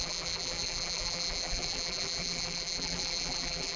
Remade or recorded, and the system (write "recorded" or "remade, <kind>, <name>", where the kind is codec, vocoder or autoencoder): remade, vocoder, BigVGAN v2